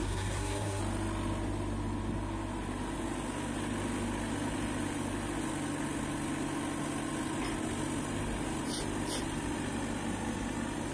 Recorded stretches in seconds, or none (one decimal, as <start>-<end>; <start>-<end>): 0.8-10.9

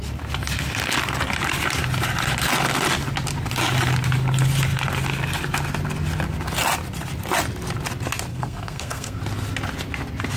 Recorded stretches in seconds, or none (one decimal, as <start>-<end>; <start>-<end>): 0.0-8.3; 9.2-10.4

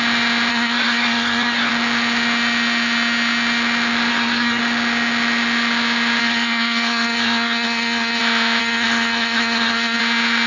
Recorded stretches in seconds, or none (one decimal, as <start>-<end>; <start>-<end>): 0.0-0.5; 1.7-4.1; 4.6-6.2; 8.2-8.6; 10.0-10.5

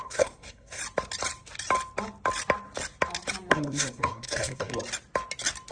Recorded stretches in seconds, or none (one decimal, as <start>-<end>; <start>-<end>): 0.8-3.5; 4.7-5.7

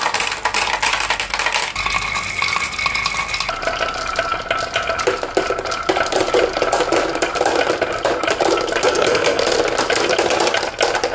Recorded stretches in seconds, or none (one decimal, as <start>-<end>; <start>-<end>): 0.0-8.8; 9.4-11.1